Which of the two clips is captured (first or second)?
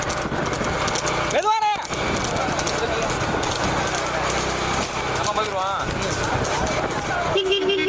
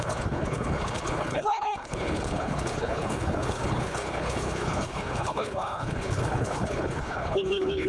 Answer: first